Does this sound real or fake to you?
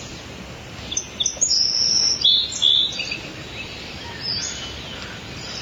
real